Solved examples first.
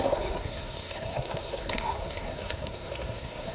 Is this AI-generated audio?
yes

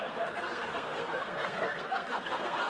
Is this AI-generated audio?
yes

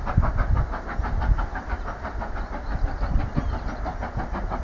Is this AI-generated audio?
no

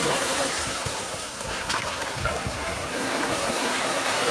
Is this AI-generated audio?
yes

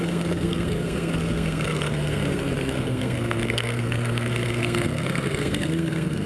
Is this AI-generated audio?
yes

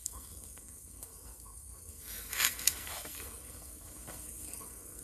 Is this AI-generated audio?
yes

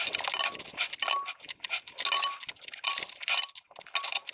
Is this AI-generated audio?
no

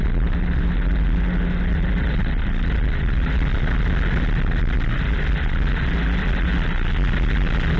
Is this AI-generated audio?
no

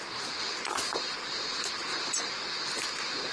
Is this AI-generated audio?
no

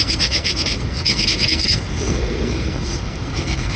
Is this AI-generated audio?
yes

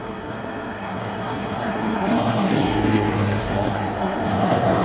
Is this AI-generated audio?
yes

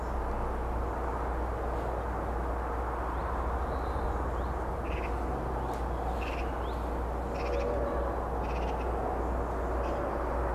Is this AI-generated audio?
no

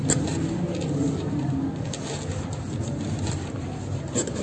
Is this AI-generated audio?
no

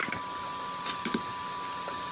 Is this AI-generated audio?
no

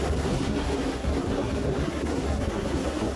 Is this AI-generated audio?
yes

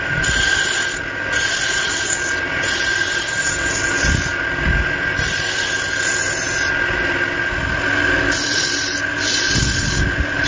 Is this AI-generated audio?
no